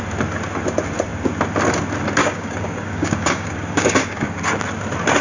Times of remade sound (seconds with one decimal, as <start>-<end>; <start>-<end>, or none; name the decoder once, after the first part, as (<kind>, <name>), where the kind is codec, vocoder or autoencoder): 2.2-4.4 (codec, DAC)